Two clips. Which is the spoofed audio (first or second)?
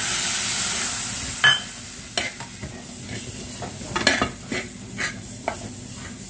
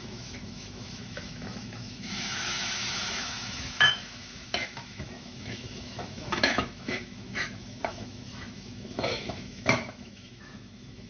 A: second